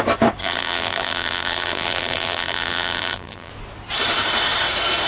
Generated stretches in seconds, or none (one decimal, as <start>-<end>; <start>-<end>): 0.4-3.5